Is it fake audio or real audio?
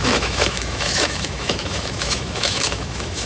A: fake